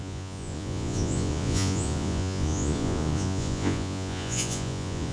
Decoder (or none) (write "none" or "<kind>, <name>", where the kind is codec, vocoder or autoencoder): vocoder, Vocos